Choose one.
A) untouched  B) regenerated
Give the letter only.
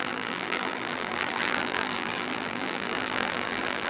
B